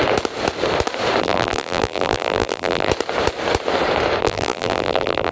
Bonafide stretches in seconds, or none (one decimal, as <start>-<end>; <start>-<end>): 0.0-1.2; 2.9-4.2